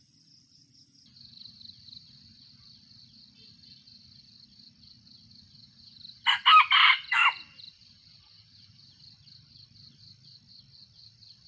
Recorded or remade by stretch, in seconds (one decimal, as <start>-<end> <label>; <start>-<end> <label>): 0.0-5.6 recorded; 5.6-9.0 remade; 9.0-11.5 recorded